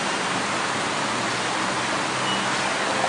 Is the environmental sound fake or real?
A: real